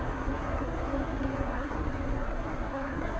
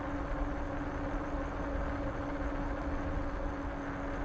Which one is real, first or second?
second